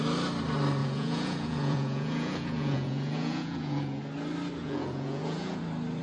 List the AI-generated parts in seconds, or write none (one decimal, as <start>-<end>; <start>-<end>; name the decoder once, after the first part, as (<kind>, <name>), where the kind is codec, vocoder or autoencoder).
0.8-4.0 (vocoder, Vocos); 4.6-5.6